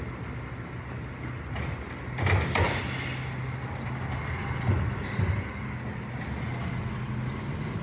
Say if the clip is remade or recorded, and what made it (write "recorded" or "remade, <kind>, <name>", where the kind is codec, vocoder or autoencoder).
recorded